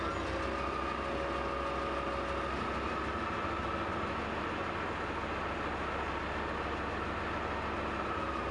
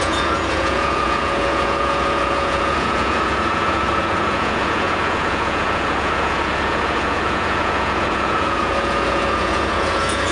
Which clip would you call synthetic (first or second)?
second